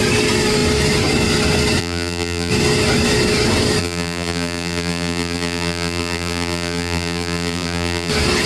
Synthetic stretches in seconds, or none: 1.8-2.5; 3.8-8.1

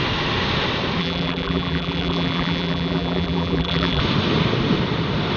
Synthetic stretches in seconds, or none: 1.0-4.0

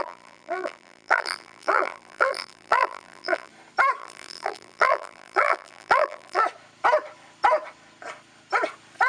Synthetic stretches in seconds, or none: 0.0-3.5; 4.0-6.4

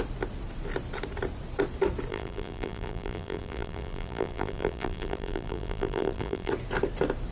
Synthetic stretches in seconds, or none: 2.1-6.5

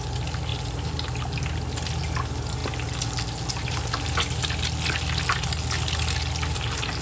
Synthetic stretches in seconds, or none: none

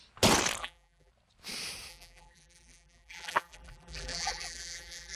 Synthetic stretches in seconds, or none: 0.6-1.1; 1.9-5.2

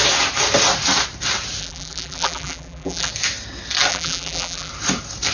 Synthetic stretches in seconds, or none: 1.6-3.1; 3.9-4.7

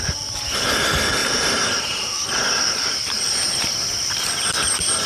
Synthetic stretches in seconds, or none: 1.2-4.3